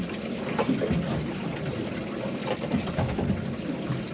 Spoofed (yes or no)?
no